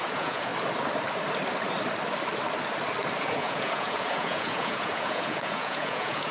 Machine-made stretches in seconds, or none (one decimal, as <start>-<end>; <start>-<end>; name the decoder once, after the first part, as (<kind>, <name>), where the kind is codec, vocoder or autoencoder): 0.0-0.5 (vocoder, Vocos); 3.2-6.3